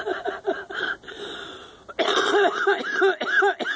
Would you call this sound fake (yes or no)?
no